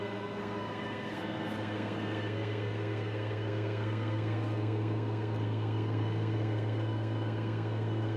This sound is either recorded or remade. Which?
remade